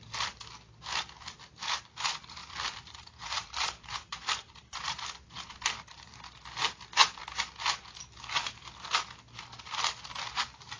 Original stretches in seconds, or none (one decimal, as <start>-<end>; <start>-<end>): 0.0-2.4; 5.5-10.8